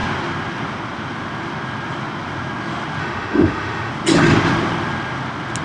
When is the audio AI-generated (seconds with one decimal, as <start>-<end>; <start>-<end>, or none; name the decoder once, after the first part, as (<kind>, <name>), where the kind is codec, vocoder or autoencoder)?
3.0-3.9 (autoencoder, DAC-VAE)

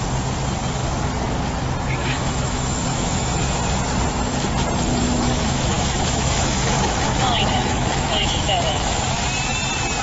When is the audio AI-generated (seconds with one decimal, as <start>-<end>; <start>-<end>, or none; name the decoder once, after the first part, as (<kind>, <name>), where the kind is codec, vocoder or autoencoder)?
2.0-3.6 (autoencoder, DAC-VAE); 5.0-9.0

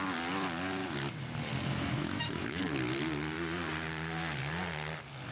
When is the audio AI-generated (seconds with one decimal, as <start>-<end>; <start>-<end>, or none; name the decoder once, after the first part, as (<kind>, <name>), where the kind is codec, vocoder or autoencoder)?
2.0-2.6 (autoencoder, DAC-VAE)